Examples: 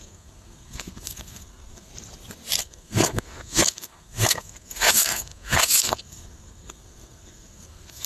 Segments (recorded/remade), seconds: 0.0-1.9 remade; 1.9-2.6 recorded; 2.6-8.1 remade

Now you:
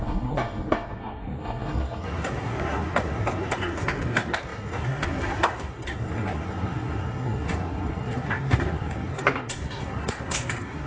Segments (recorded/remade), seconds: 0.0-10.9 remade

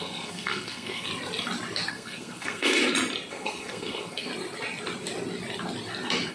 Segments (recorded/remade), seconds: 0.0-1.1 remade; 1.1-1.9 recorded; 1.9-2.8 remade; 2.8-3.3 recorded; 3.3-4.3 remade; 4.3-6.3 recorded

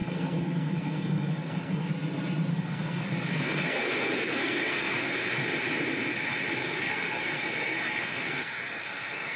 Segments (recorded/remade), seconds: 0.0-1.9 remade; 1.9-2.5 recorded; 2.5-5.3 remade; 5.3-6.6 recorded; 6.6-9.4 remade

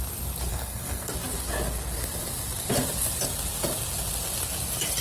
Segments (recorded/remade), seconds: 0.0-0.5 recorded; 0.5-1.1 remade; 1.1-5.0 recorded

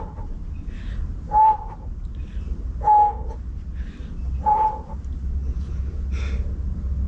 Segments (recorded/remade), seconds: 0.0-7.1 recorded

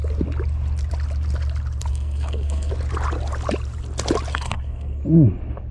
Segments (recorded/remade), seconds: 0.0-1.9 recorded; 1.9-2.7 remade; 2.7-4.3 recorded; 4.3-5.0 remade; 5.0-5.7 recorded

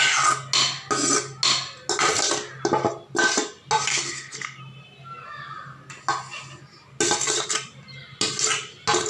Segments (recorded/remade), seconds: 0.0-3.9 recorded; 3.9-4.6 remade; 4.6-9.1 recorded